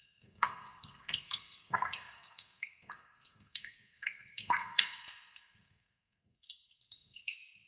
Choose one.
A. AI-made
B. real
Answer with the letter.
A